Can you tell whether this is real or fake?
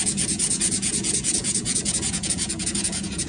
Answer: fake